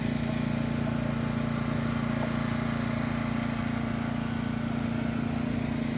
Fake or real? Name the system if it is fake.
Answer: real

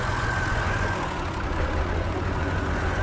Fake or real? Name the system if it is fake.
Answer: fake, vocoder, Vocos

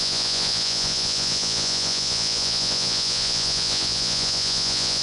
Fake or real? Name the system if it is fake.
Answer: fake, vocoder, Vocos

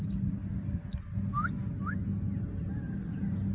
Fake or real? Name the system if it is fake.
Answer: real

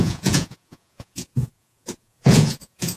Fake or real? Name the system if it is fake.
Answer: fake, vocoder, Vocos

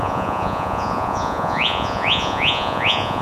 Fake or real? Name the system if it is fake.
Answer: fake, vocoder, Vocos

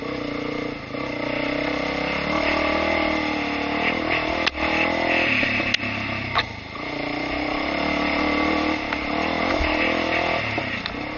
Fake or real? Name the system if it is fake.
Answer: real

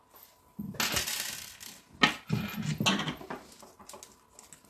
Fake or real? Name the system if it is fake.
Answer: real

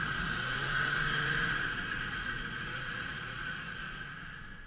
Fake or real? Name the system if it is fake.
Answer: fake, vocoder, Vocos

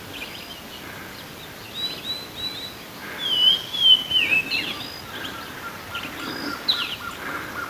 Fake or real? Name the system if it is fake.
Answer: real